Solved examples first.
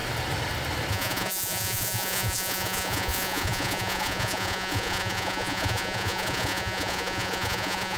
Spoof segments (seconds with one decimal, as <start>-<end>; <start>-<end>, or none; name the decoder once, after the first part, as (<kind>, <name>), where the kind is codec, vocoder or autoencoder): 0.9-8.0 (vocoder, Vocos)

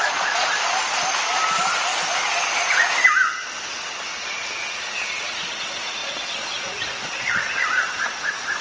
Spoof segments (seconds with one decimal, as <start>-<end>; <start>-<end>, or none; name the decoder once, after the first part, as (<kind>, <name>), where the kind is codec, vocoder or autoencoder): 0.0-0.5 (vocoder, Vocos); 5.5-8.6

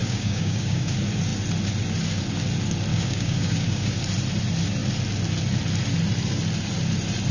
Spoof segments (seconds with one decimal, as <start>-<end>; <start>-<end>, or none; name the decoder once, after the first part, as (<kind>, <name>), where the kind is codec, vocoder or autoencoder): 0.0-0.9 (codec, DAC); 2.9-4.0